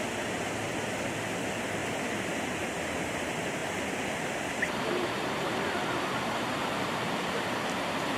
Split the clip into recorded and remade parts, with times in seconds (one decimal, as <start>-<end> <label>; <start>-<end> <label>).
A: 0.0-1.8 recorded; 1.8-2.5 remade; 2.5-3.6 recorded; 3.6-7.4 remade; 7.4-8.2 recorded